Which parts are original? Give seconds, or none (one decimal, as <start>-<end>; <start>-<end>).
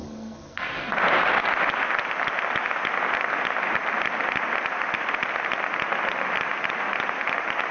0.9-7.7